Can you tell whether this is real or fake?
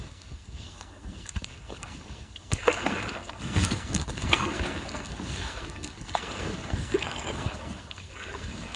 fake